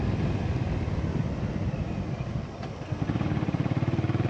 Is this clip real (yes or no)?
yes